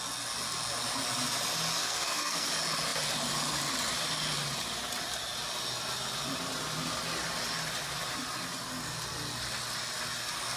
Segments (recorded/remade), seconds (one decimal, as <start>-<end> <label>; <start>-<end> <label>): 0.0-1.8 recorded; 1.8-2.5 remade; 2.5-10.6 recorded